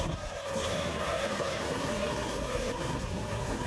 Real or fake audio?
fake